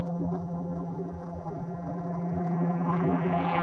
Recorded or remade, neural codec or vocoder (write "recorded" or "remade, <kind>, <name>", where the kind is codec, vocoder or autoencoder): remade, vocoder, BigVGAN v2